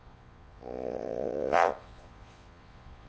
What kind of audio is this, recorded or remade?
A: remade